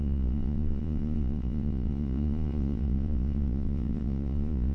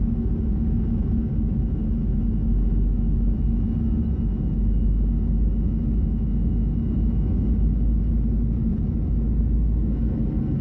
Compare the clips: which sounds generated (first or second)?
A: first